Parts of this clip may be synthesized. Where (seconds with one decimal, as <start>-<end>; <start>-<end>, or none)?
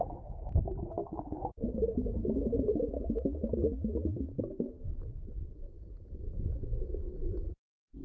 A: 0.0-2.7; 4.4-8.0